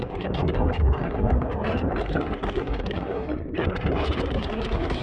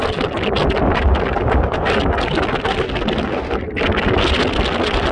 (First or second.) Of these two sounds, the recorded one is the second